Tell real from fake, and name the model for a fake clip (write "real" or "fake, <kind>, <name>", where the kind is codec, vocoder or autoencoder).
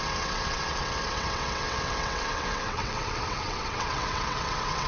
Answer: fake, vocoder, WaveNeXt